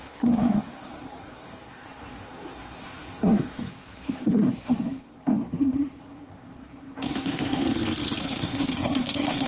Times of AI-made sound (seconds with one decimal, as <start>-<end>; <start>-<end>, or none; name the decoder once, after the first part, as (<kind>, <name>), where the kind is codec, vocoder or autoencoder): 0.0-7.6 (codec, SNAC); 8.2-9.5